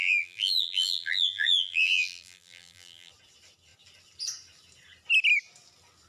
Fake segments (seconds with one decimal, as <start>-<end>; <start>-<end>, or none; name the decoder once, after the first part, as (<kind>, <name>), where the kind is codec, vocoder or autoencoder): 0.0-3.1 (vocoder, BigVGAN v2)